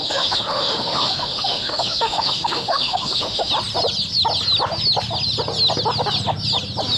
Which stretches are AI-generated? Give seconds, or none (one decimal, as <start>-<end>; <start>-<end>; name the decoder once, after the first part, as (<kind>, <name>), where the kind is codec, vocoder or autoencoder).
0.0-3.5 (autoencoder, DAC-VAE)